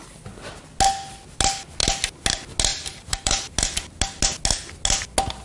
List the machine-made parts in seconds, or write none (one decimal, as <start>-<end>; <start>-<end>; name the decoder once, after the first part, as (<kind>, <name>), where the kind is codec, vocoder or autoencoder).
2.7-3.5 (vocoder, BigVGAN v2)